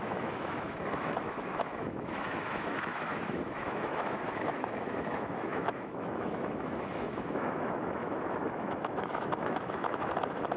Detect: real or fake fake